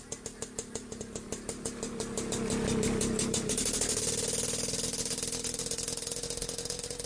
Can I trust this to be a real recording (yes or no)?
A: yes